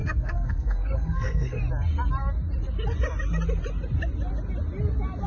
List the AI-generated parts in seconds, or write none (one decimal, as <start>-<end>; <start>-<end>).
0.0-1.6